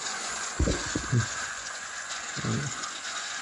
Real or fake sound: fake